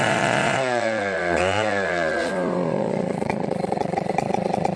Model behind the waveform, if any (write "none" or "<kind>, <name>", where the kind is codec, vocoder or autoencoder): vocoder, Vocos